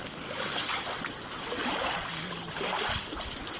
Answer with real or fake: real